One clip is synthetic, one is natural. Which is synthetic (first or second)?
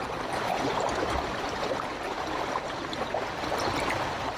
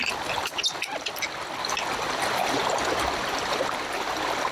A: first